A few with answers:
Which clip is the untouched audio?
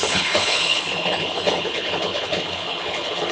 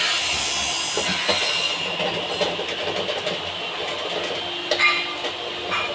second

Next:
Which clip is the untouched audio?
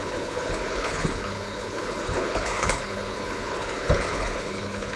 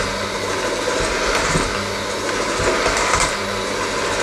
second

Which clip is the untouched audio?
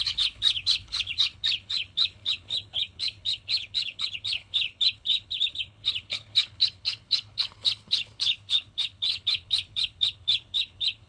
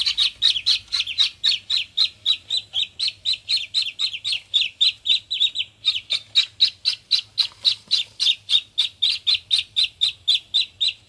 second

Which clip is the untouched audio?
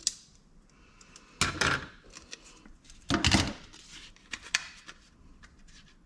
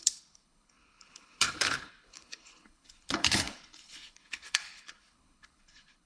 first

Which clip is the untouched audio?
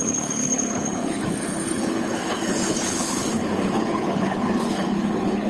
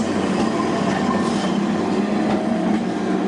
second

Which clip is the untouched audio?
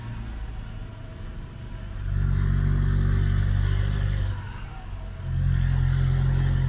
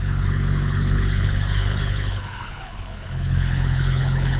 first